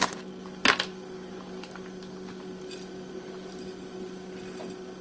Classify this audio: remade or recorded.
recorded